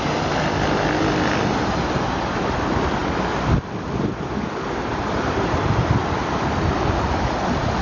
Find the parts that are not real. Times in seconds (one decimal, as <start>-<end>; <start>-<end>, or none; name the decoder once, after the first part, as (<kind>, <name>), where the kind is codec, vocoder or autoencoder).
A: none